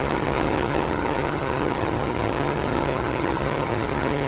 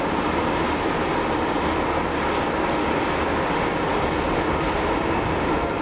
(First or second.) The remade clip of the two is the first